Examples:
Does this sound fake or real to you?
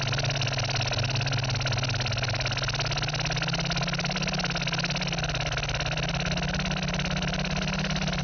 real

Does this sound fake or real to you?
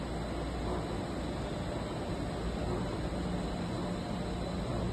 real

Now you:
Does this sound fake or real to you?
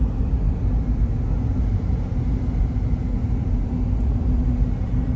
real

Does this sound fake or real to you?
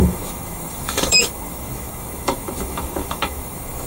fake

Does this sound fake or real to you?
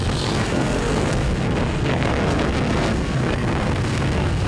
fake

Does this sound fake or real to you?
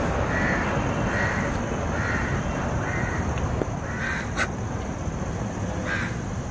real